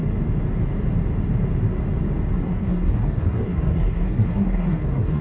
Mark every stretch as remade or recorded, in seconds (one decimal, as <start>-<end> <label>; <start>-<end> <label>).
0.0-2.3 recorded; 2.3-5.2 remade